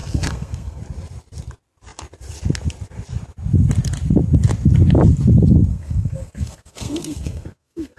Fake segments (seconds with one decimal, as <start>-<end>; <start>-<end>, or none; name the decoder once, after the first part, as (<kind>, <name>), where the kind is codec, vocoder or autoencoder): 0.0-0.8 (codec, SNAC); 5.7-8.0